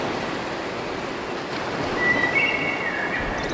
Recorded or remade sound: recorded